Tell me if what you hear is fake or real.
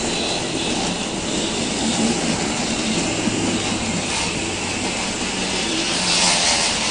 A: real